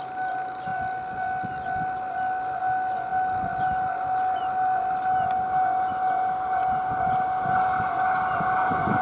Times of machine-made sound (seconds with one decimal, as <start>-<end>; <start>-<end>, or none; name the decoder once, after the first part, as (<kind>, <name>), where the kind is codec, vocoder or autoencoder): none